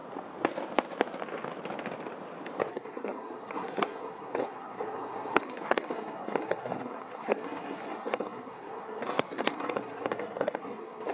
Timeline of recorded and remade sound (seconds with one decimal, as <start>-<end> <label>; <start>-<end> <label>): 0.0-2.7 recorded; 2.7-11.1 remade